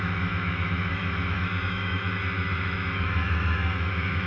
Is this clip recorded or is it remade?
remade